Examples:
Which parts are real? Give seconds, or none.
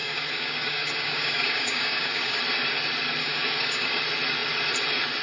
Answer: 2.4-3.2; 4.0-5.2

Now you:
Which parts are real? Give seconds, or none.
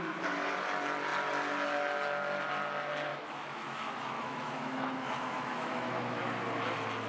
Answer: 0.0-3.1; 6.2-7.1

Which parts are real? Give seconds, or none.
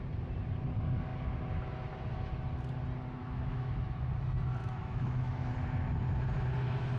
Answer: 0.0-3.2; 3.7-4.6; 5.5-7.0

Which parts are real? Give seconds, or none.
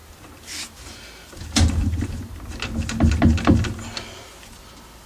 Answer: 0.0-5.1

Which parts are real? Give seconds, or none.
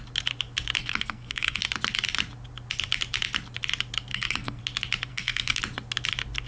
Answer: 0.0-0.8; 1.6-4.1; 4.6-5.1; 5.6-6.5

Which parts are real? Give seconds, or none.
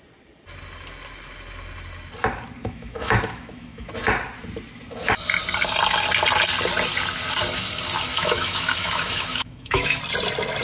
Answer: 0.0-2.6; 3.9-8.1; 10.0-10.6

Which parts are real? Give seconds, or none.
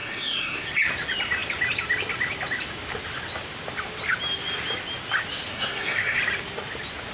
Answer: 0.7-5.5; 6.2-7.1